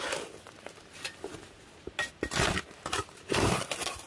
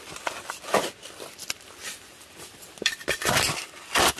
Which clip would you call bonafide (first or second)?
first